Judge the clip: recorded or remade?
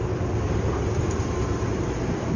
recorded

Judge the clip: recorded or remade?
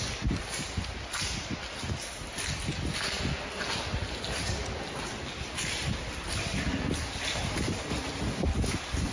recorded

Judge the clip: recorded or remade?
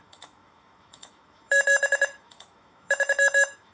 remade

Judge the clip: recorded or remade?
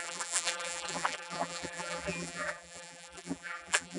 remade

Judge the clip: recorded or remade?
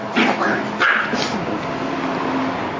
recorded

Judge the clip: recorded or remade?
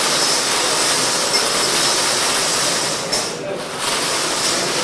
recorded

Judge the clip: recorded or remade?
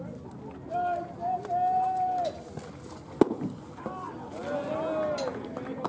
recorded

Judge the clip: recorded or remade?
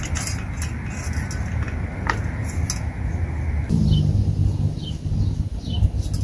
recorded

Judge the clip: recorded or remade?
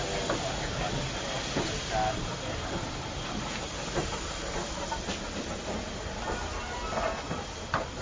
recorded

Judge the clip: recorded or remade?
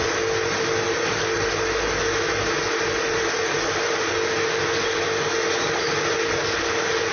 recorded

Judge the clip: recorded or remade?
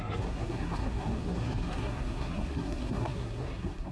remade